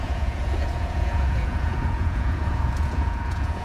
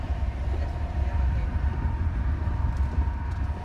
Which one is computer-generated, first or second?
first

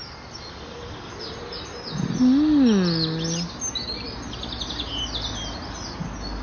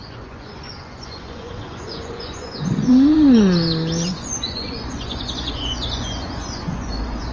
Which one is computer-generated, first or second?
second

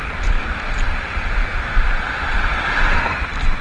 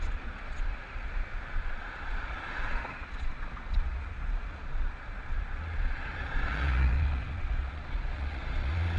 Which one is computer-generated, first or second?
second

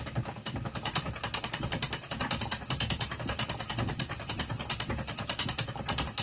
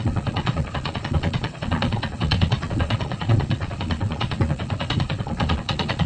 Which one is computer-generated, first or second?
second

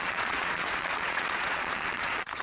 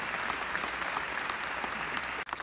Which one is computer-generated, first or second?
first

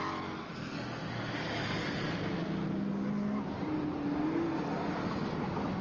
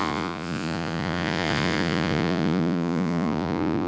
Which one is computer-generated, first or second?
second